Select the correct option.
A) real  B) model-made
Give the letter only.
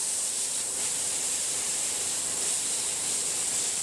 B